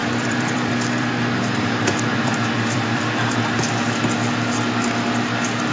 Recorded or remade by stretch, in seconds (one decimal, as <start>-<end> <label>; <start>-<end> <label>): 0.0-3.4 remade; 3.4-5.7 recorded